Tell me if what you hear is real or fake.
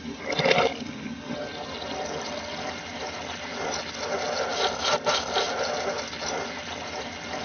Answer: real